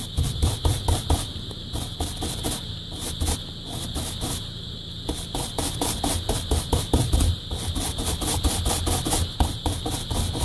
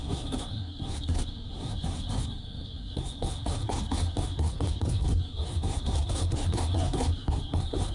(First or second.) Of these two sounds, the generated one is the second